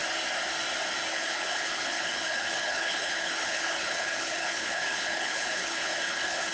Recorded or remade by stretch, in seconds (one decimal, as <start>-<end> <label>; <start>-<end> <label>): 0.0-1.1 recorded; 1.1-6.5 remade